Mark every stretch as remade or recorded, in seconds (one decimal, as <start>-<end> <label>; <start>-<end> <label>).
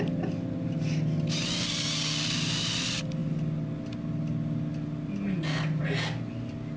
0.0-6.8 recorded